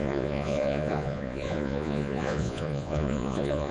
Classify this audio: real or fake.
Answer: fake